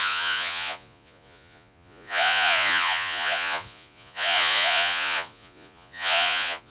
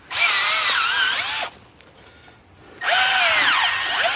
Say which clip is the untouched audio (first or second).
second